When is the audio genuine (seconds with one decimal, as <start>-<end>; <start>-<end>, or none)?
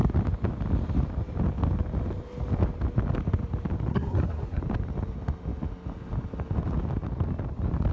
0.0-3.9; 4.6-7.9